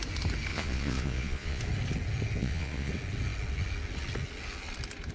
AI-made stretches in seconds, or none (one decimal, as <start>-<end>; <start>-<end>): 0.5-1.6; 2.4-2.9